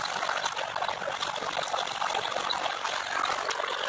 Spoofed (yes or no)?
no